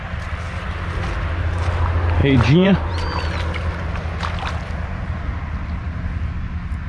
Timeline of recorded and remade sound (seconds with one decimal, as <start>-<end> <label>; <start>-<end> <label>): 0.0-2.2 recorded; 2.2-2.9 remade; 2.9-6.9 recorded